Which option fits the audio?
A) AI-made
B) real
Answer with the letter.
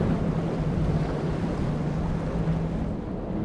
B